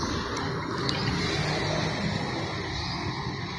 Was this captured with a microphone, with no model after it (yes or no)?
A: yes